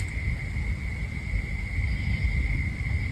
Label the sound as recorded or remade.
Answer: recorded